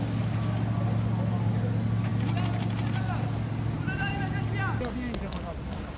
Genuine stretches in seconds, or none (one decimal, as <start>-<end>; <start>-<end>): 0.0-6.0